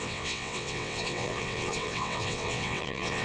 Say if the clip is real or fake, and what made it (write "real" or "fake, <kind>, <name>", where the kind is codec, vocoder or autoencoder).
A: fake, vocoder, WaveNeXt